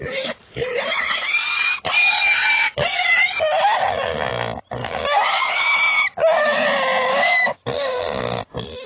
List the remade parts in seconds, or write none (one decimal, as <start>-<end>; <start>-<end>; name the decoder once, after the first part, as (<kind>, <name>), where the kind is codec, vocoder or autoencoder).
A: 4.8-5.6 (codec, DAC); 7.1-8.4